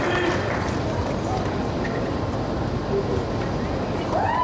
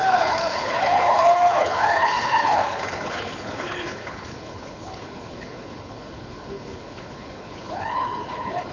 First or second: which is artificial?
second